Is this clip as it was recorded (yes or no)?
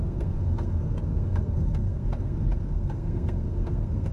no